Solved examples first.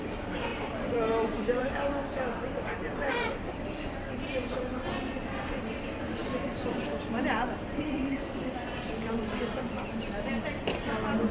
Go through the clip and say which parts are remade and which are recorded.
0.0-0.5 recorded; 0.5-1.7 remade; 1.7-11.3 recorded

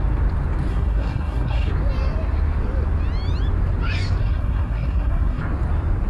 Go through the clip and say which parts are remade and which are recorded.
0.0-0.7 recorded; 0.7-1.7 remade; 1.7-4.2 recorded; 4.2-5.4 remade; 5.4-6.1 recorded

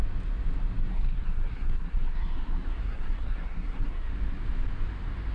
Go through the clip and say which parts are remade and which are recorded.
0.0-0.9 recorded; 0.9-4.1 remade; 4.1-5.3 recorded